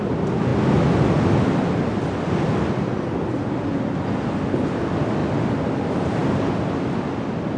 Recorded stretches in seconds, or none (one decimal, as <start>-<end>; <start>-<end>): 0.0-7.6